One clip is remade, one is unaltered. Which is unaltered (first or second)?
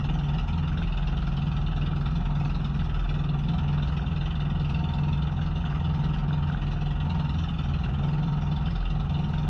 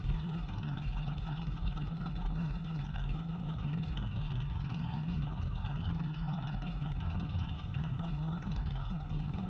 first